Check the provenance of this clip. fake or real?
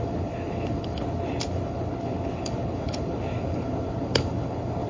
fake